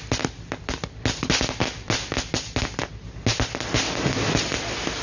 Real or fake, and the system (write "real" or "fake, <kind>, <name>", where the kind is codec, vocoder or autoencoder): real